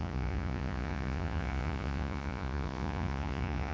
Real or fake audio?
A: fake